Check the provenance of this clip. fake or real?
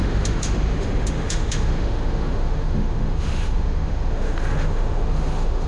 fake